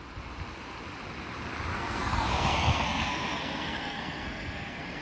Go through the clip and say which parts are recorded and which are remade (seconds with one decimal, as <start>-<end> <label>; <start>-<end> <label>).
0.0-1.7 recorded; 1.7-5.0 remade